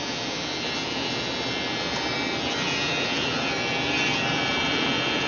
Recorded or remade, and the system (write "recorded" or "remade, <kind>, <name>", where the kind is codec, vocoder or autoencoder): remade, vocoder, BigVGAN v2